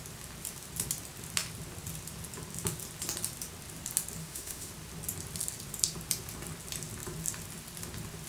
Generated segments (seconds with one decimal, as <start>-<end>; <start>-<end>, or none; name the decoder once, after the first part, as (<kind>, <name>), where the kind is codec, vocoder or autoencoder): 4.2-4.7 (autoencoder, DAC-VAE)